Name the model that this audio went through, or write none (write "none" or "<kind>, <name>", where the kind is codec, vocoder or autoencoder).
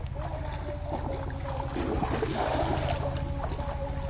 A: none